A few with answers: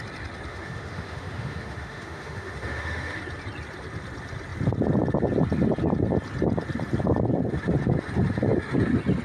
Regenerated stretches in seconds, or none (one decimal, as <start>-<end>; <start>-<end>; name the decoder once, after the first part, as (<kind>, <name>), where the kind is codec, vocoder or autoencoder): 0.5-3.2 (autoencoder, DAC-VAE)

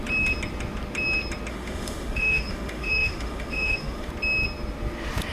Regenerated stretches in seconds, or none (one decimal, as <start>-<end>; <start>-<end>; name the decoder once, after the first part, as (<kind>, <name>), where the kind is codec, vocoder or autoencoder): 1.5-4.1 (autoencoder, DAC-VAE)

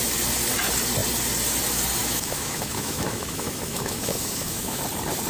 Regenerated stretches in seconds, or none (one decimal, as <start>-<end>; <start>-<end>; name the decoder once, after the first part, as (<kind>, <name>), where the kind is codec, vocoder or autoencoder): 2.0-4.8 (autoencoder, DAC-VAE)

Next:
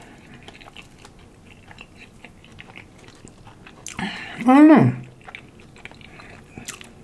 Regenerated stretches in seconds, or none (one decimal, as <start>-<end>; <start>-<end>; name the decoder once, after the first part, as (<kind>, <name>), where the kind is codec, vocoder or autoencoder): none